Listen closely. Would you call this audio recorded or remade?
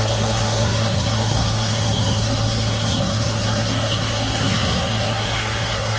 remade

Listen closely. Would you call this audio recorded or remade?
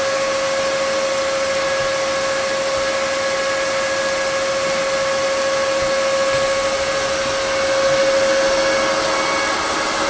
recorded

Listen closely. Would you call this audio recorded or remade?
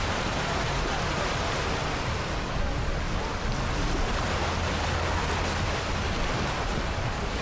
recorded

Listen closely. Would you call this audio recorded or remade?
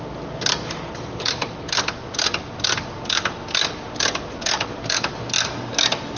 recorded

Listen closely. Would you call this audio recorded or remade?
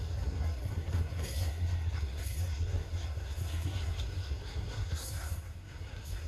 remade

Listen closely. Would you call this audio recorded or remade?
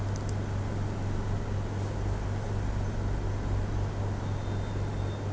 recorded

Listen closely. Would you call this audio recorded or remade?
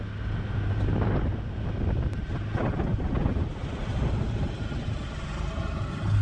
recorded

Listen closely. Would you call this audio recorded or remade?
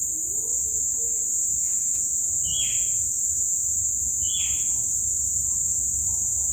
recorded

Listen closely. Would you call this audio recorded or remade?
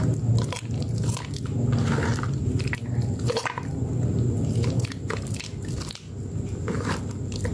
recorded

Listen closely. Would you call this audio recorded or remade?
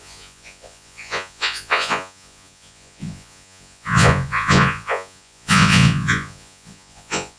remade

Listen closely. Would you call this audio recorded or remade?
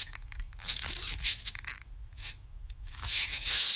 remade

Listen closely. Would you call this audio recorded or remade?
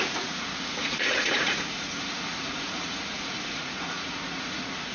remade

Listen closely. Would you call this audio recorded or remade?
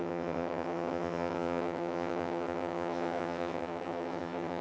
remade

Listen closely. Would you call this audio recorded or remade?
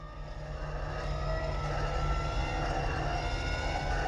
recorded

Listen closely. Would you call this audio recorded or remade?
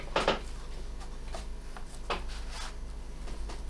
recorded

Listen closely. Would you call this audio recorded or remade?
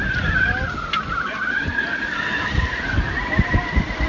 recorded